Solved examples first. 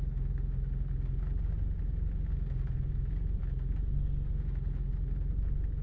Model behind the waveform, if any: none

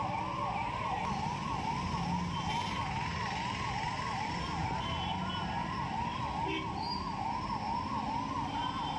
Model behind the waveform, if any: none